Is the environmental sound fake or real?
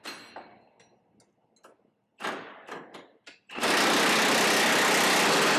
real